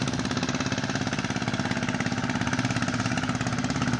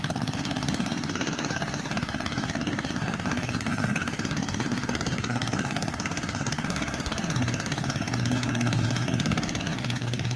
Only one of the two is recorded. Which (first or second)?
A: first